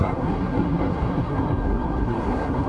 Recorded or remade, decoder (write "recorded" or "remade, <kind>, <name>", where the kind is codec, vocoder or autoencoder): remade, codec, SNAC